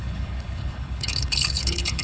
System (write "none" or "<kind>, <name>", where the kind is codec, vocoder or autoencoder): codec, HILCodec